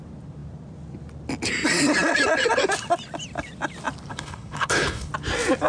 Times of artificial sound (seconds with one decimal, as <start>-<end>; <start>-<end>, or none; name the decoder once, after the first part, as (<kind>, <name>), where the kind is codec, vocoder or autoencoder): 4.1-5.1 (codec, HILCodec)